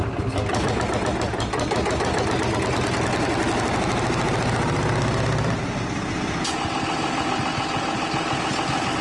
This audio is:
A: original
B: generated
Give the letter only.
A